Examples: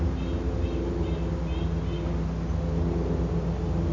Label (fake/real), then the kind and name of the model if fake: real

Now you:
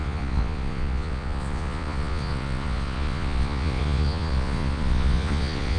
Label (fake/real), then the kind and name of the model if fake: fake, vocoder, Vocos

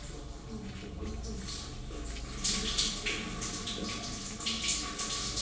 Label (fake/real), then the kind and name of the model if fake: real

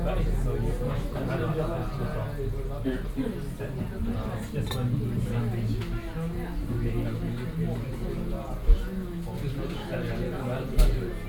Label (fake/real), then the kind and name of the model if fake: real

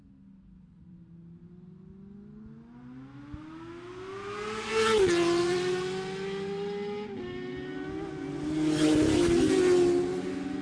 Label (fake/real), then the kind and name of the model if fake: real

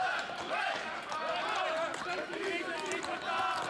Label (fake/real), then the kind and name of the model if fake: real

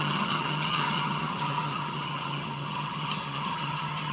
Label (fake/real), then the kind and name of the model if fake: fake, vocoder, HiFi-GAN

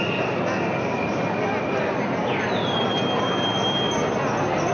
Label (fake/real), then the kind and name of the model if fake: real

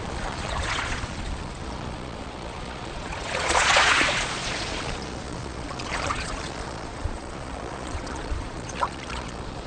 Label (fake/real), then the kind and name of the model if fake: fake, vocoder, Vocos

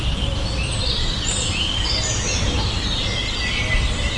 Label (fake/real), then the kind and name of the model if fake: real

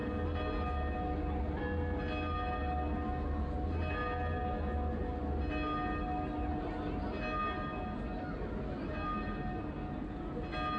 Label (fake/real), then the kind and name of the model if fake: real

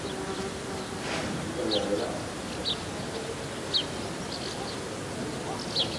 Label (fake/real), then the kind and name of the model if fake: real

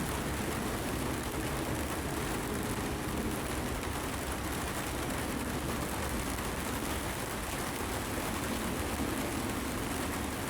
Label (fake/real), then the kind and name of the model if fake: real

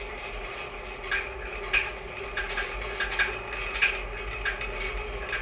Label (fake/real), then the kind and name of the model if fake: real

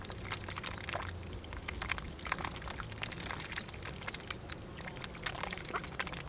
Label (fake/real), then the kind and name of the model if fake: real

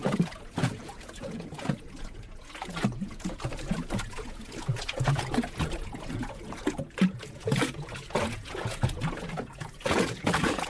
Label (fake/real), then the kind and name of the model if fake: fake, vocoder, Vocos